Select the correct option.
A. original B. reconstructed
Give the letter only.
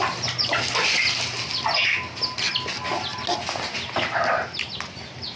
A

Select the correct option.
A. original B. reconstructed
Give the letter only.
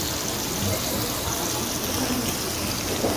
A